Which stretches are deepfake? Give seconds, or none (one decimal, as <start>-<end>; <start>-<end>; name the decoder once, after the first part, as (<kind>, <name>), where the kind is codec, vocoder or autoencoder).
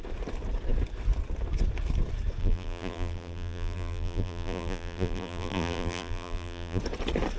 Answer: 2.4-6.8 (vocoder, BigVGAN v2)